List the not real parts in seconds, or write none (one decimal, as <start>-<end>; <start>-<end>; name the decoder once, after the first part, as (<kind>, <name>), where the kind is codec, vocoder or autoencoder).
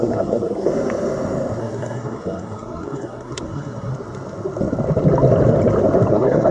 0.0-0.7 (codec, SNAC); 1.6-3.9; 6.1-6.5